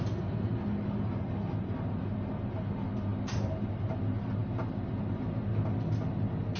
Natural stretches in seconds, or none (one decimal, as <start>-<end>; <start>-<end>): 0.0-6.6